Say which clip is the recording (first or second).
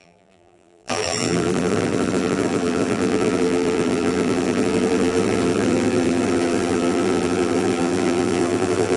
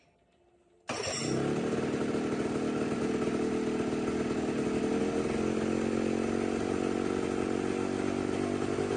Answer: second